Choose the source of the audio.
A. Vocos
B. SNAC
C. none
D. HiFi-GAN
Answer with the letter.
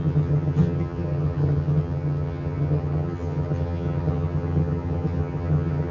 D